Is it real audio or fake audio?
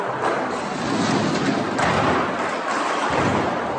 real